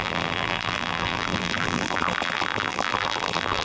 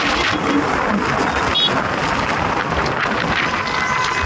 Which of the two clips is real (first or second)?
second